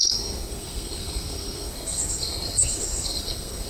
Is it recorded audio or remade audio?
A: remade